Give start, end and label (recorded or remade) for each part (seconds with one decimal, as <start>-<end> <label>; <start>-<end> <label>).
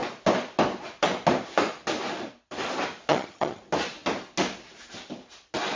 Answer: 0.0-3.1 recorded; 3.1-3.6 remade; 3.6-5.8 recorded